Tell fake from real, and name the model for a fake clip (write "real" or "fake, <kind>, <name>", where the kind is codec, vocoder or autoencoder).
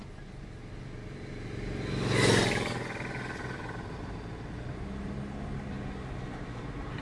real